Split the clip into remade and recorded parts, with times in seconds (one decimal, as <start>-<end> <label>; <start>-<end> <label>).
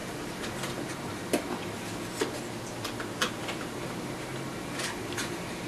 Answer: 0.0-3.4 recorded; 3.4-4.3 remade; 4.3-5.0 recorded; 5.0-5.7 remade